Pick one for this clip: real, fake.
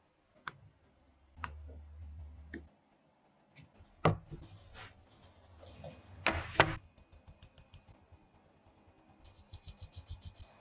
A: real